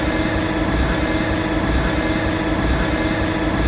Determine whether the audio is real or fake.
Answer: real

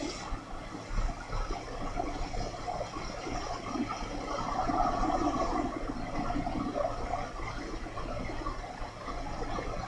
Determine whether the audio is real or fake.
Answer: real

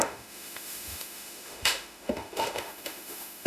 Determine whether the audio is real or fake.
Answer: fake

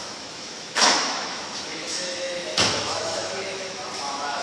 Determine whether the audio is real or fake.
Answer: fake